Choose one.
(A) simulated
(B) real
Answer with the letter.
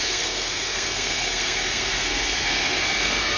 A